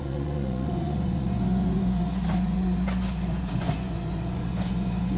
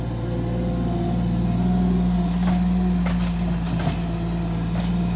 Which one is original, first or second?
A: second